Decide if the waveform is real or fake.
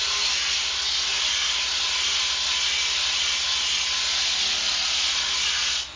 real